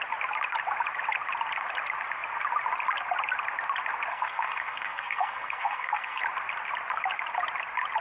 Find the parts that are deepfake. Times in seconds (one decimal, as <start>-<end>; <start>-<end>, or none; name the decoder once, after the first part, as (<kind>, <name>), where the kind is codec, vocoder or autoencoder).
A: 4.1-6.2 (codec, SNAC)